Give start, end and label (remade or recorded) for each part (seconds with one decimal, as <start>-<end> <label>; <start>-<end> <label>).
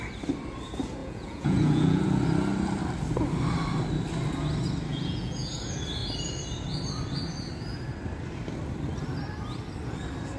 0.0-1.0 recorded; 1.0-2.0 remade; 2.0-4.9 recorded; 4.9-5.5 remade; 5.5-10.4 recorded